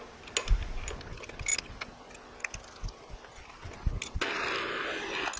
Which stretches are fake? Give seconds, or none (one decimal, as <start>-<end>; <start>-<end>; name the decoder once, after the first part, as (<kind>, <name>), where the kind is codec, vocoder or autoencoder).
none